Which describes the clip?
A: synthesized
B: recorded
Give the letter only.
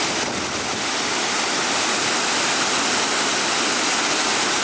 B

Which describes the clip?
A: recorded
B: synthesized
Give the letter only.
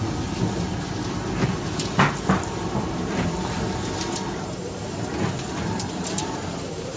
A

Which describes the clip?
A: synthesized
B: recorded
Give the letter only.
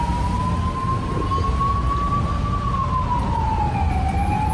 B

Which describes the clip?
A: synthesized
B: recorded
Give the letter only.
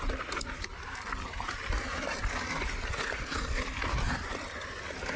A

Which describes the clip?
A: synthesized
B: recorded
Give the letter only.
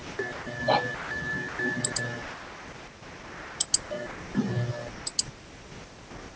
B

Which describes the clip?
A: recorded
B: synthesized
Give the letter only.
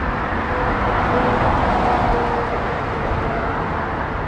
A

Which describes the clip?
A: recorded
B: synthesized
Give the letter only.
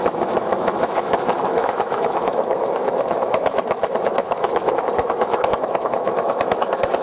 B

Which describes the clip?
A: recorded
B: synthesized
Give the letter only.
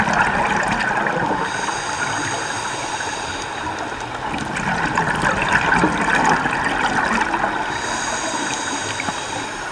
A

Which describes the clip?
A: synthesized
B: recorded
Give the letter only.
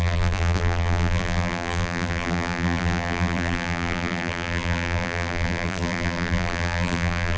A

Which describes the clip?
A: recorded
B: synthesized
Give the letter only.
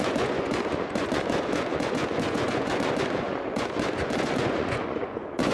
B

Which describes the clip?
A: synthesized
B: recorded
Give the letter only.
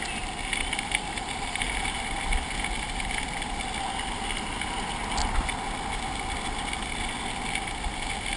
B